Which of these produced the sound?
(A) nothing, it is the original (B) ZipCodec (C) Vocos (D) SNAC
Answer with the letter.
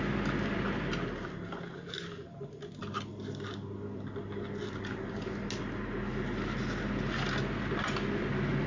A